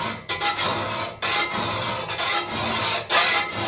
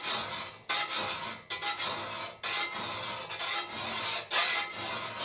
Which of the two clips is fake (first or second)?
first